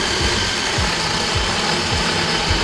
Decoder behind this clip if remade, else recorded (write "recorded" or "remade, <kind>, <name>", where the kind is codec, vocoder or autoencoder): remade, vocoder, BigVGAN v2